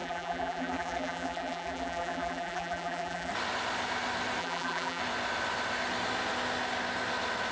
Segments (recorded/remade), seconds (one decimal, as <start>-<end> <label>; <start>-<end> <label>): 0.0-3.3 remade; 3.3-4.4 recorded; 4.4-5.0 remade; 5.0-7.5 recorded